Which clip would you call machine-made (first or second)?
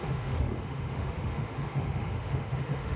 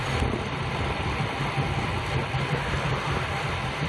first